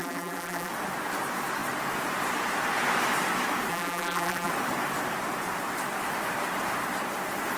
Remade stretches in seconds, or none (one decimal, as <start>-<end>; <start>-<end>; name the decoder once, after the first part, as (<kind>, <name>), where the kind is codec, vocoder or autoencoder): 0.0-0.7 (vocoder, BigVGAN v2); 3.7-4.5

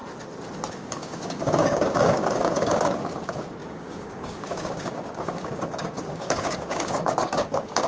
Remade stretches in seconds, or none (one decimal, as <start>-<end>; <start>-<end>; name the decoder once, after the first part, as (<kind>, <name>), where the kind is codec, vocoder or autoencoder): 0.7-7.9 (codec, DAC)

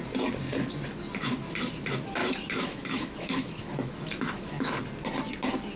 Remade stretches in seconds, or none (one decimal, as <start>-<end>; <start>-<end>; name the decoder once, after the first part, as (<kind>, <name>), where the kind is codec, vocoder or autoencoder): 2.2-4.6 (autoencoder, DAC-VAE)

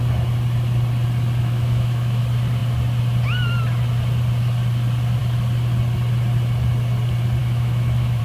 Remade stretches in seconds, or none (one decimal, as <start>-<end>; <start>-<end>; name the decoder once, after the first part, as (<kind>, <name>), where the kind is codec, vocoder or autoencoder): 1.4-2.2 (autoencoder, DAC-VAE); 7.4-8.2

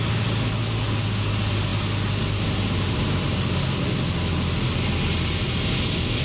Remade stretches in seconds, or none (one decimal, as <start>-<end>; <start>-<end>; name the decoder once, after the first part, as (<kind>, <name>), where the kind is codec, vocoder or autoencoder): none

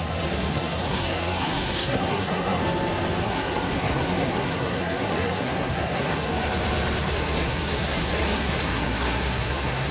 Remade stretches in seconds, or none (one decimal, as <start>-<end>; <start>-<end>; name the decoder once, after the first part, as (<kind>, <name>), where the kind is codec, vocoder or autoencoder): 0.0-2.6 (codec, SNAC); 3.2-6.3; 7.1-9.9